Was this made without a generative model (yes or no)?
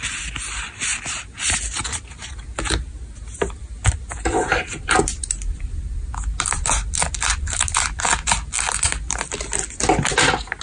yes